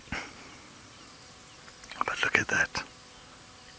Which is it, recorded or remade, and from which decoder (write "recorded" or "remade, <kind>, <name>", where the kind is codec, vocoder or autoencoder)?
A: recorded